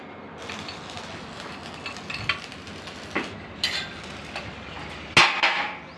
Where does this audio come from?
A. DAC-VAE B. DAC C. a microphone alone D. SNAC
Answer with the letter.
C